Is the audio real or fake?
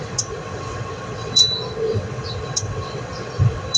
fake